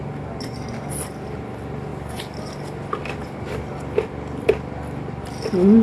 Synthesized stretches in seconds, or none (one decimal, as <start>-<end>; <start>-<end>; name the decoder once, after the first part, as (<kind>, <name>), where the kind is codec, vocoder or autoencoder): none